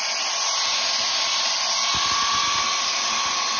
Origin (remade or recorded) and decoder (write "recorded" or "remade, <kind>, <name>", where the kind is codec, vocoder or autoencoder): recorded